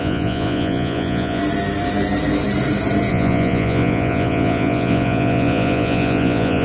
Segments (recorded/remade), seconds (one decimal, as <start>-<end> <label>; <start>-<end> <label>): 0.0-1.4 remade; 1.4-3.1 recorded; 3.1-6.6 remade